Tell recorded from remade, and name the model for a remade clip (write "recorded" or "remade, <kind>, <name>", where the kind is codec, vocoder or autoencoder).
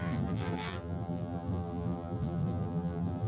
remade, vocoder, BigVGAN v2